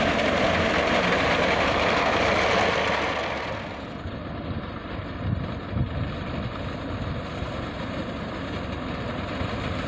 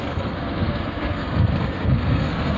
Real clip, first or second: first